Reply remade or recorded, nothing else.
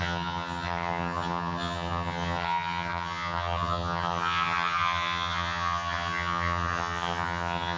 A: remade